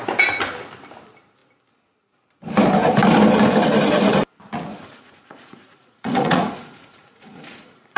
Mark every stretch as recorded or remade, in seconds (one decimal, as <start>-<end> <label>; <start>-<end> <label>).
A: 0.0-4.7 recorded; 4.7-8.0 remade